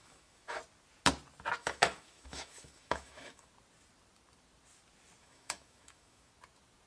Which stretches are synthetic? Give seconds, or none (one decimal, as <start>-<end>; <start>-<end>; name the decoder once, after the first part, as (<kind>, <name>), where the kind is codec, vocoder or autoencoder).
0.0-0.6 (autoencoder, DAC-VAE); 1.6-3.5; 5.2-6.3